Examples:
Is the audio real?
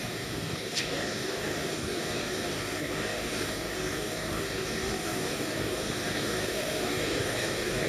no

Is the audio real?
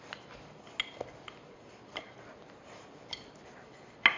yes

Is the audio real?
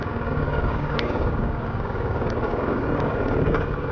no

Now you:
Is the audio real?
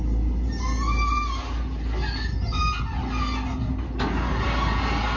yes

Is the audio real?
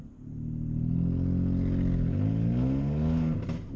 yes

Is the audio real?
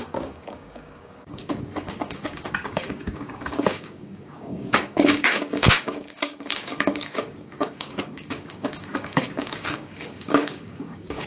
no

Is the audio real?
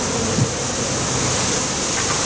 yes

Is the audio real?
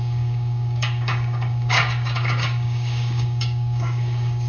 no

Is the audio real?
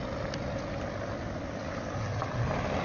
yes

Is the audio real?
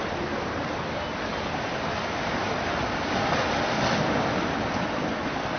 yes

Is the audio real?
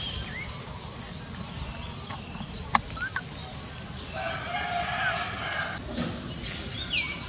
yes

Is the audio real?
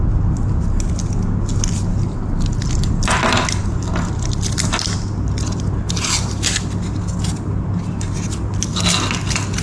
yes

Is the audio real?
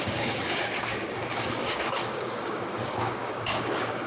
no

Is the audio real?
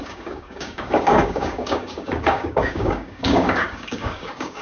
no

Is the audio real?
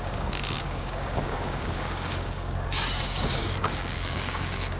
no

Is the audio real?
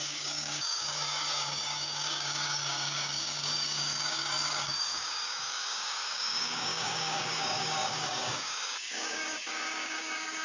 no